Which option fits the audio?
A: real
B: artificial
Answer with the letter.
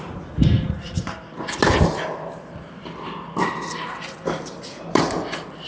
A